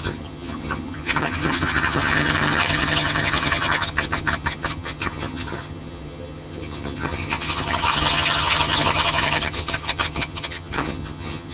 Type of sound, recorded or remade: remade